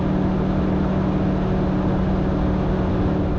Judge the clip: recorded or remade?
recorded